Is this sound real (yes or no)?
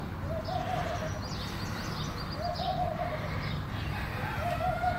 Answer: yes